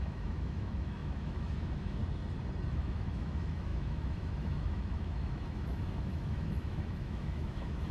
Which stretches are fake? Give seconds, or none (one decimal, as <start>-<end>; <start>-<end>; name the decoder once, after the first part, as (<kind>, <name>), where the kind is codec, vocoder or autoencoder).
0.0-2.0 (autoencoder, DAC-VAE); 2.7-7.9